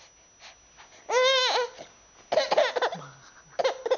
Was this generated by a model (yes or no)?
no